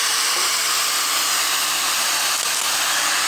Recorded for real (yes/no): yes